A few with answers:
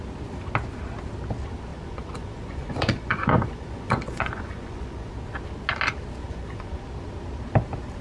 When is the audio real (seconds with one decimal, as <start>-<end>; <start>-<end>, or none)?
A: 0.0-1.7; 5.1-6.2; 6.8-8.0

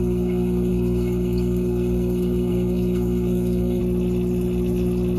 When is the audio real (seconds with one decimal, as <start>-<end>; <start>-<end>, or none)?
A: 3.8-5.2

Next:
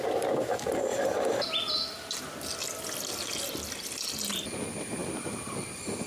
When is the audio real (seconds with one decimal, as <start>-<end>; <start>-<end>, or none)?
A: 0.0-5.0